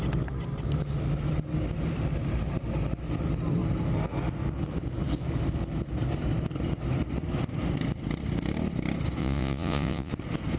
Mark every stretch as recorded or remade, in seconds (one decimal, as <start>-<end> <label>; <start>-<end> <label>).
0.0-9.2 recorded; 9.2-10.1 remade; 10.1-10.6 recorded